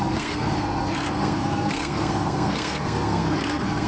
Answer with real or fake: fake